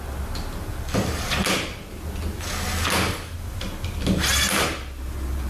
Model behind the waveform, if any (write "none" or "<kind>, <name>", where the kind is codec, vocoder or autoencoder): none